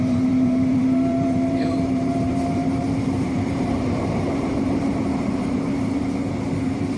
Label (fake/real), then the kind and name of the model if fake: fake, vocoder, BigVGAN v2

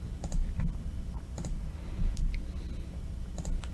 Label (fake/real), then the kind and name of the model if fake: fake, vocoder, BigVGAN v2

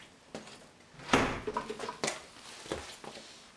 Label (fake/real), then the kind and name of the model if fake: real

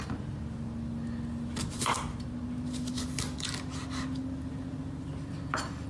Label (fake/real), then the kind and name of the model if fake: real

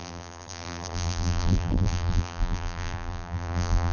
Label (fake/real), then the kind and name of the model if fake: fake, vocoder, BigVGAN v2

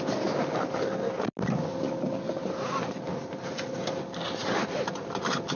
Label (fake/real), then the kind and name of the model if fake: real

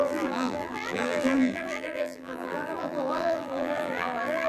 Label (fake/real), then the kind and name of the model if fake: fake, vocoder, BigVGAN v2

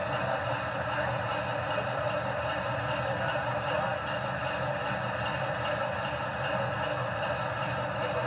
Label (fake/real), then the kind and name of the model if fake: real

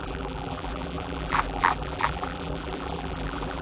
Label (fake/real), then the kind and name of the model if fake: fake, vocoder, BigVGAN v2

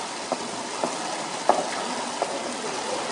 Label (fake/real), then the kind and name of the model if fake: real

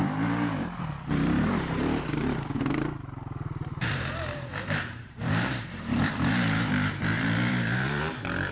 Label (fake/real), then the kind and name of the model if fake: fake, vocoder, BigVGAN v2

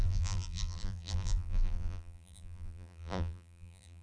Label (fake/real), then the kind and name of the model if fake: fake, vocoder, BigVGAN v2